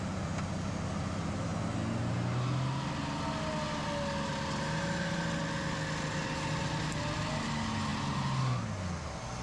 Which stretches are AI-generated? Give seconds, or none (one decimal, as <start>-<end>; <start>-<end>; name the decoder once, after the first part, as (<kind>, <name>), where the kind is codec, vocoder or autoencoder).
none